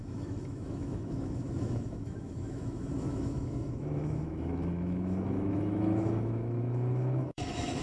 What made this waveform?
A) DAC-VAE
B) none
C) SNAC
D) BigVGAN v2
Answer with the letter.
A